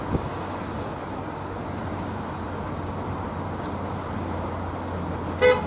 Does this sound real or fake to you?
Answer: real